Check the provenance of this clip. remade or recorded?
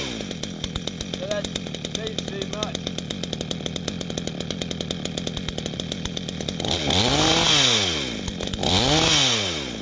recorded